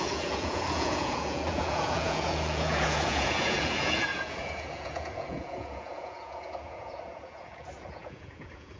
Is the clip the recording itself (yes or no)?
no